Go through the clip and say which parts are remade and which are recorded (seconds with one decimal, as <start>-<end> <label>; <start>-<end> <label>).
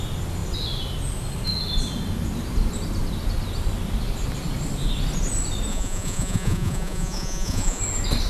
0.0-5.7 recorded; 5.7-7.8 remade; 7.8-8.3 recorded